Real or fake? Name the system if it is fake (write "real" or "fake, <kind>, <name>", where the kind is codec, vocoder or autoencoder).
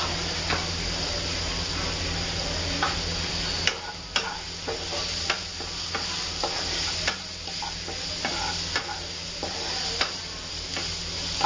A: real